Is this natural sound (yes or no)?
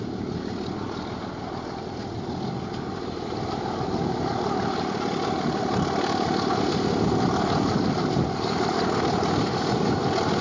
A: yes